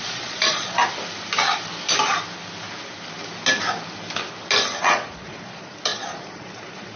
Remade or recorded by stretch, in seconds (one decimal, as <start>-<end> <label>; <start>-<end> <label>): 0.0-0.8 remade; 0.8-4.8 recorded; 4.8-7.0 remade